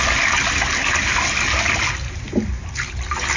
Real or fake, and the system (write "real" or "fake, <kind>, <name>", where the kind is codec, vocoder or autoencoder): real